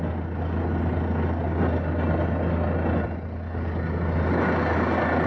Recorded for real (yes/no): yes